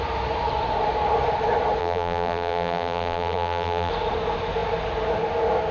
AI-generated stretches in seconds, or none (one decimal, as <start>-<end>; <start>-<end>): 1.8-3.9